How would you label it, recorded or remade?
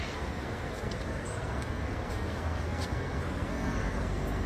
remade